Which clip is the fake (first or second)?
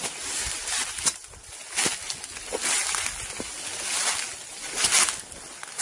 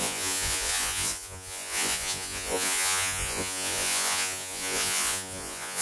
second